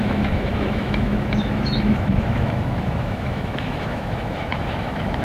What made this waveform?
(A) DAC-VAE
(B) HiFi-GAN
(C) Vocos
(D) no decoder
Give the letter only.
A